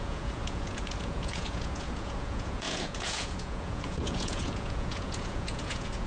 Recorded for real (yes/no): no